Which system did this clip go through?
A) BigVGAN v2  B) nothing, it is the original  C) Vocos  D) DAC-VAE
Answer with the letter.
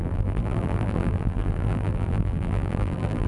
A